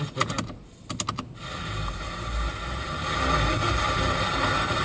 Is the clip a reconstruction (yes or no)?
no